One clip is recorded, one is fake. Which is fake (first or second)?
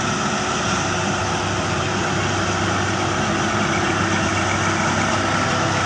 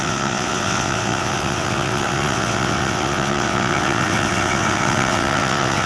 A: second